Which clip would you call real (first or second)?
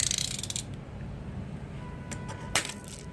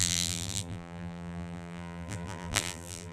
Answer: first